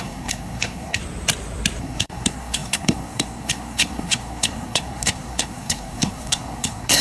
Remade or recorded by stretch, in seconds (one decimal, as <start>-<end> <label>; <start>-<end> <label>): 0.0-1.0 remade; 1.0-1.8 recorded; 1.8-7.0 remade